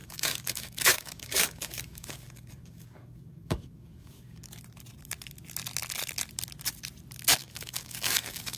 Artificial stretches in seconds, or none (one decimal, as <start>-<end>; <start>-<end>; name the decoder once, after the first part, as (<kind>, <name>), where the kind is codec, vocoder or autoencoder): 0.0-4.4 (codec, DAC); 7.4-8.6